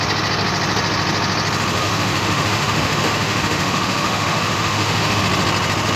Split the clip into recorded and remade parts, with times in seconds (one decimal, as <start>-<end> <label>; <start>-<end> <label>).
0.0-1.8 recorded; 1.8-5.2 remade; 5.2-6.0 recorded